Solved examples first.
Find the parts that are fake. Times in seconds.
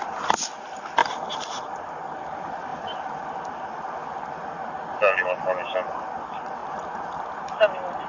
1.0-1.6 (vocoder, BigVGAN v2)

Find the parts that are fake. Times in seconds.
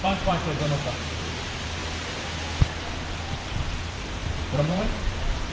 0.0-1.8 (vocoder, BigVGAN v2); 3.8-5.5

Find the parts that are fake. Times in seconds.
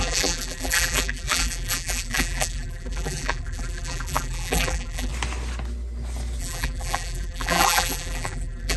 0.0-5.1 (vocoder, BigVGAN v2); 6.4-8.8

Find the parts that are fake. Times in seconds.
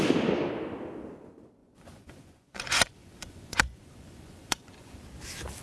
1.6-5.0 (vocoder, Vocos)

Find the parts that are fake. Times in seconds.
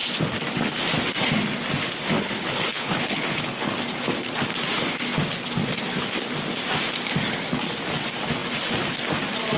2.1-3.7 (codec, HILCodec)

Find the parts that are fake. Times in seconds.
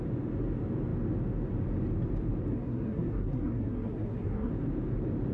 2.5-4.5 (codec, SNAC)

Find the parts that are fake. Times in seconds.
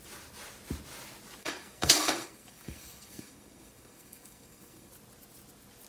1.4-4.9 (codec, SNAC)